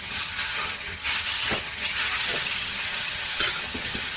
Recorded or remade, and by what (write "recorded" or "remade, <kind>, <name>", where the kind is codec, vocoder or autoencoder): remade, vocoder, HiFi-GAN